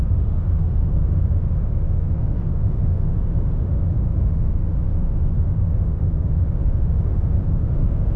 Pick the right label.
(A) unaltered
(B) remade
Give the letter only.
B